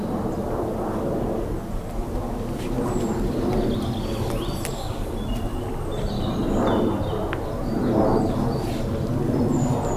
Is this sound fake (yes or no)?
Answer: no